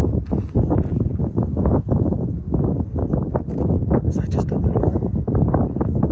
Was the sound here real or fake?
real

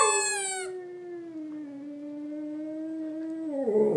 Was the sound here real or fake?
real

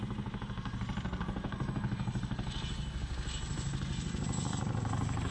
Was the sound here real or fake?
real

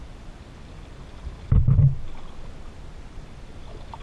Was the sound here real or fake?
real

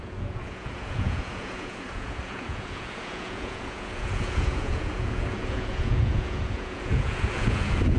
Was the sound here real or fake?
fake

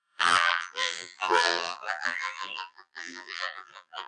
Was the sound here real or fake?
fake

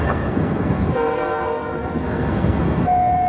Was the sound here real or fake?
fake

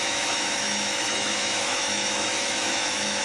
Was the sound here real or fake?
fake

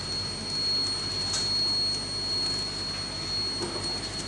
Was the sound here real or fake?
real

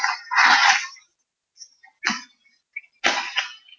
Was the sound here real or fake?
real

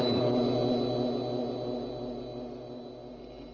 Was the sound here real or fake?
real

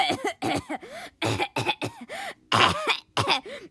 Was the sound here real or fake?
real